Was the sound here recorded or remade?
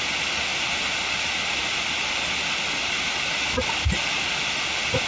recorded